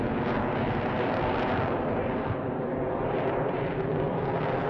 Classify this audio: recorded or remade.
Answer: recorded